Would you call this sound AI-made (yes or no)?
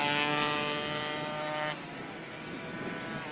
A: no